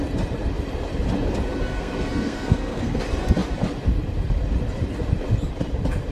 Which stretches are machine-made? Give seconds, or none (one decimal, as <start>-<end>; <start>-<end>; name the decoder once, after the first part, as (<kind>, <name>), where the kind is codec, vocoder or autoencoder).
1.7-3.0 (codec, SNAC)